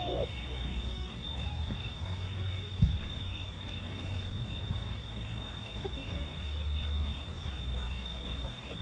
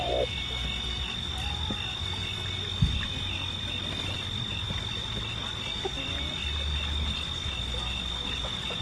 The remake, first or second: first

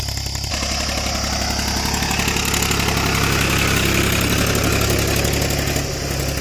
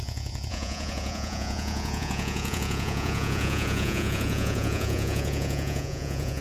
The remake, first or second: second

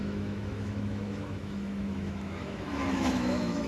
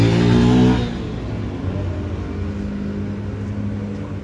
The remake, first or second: first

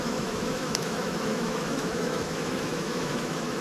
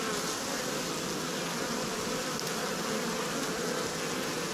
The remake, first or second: first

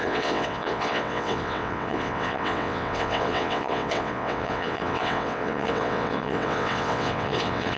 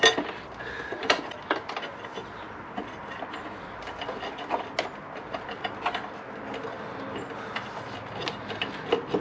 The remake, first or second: first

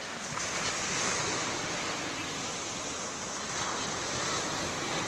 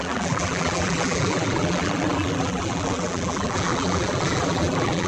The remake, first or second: second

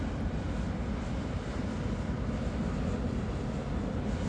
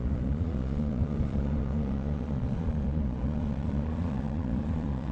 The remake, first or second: second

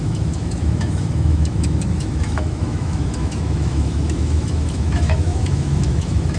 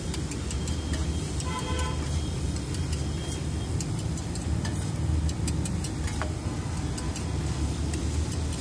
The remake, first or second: first